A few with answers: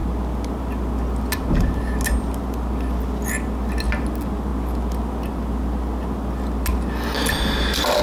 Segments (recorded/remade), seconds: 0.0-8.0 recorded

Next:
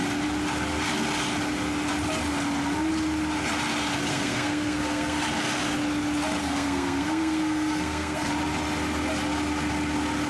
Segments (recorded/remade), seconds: 0.0-4.1 recorded; 4.1-5.2 remade; 5.2-6.4 recorded; 6.4-8.3 remade; 8.3-10.3 recorded

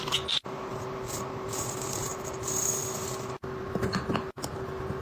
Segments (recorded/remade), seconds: 0.0-5.0 recorded

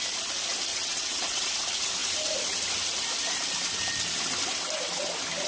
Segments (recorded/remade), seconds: 0.0-0.7 recorded; 0.7-1.5 remade; 1.5-5.5 recorded

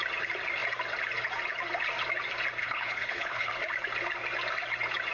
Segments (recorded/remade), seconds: 0.0-2.6 recorded; 2.6-3.5 remade; 3.5-5.1 recorded

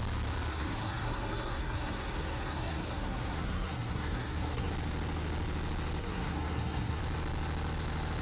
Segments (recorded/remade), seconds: 0.0-0.5 recorded; 0.5-4.7 remade; 4.7-6.0 recorded; 6.0-7.0 remade; 7.0-8.2 recorded